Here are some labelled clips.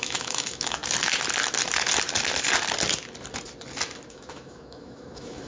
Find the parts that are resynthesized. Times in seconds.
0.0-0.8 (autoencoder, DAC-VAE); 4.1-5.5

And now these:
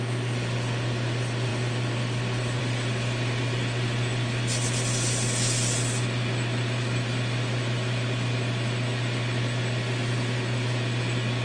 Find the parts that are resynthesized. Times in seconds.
none

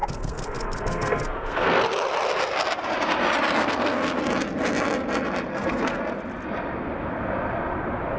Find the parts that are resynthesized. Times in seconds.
0.0-1.8 (codec, SNAC); 3.6-4.2; 5.5-6.0